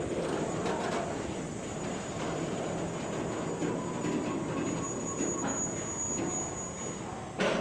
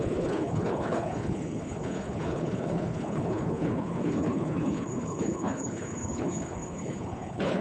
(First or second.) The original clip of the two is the first